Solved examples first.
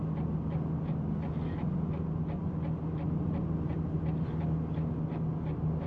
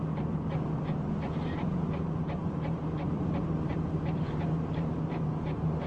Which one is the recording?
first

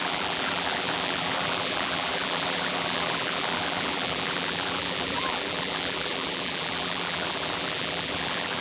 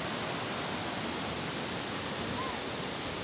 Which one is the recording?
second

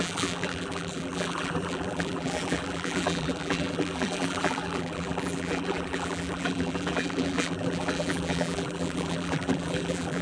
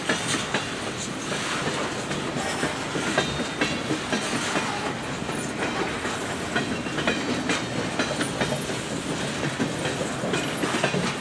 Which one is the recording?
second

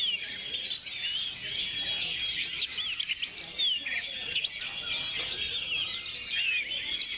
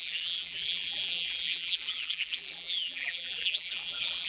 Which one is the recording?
first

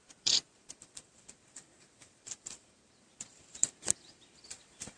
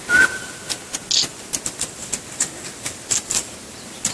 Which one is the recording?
second